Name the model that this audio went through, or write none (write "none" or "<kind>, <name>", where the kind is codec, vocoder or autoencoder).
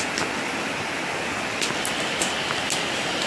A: none